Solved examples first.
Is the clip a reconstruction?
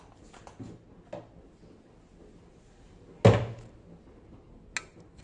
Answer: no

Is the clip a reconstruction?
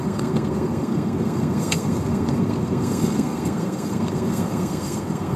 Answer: yes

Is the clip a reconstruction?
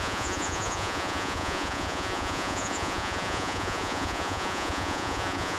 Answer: yes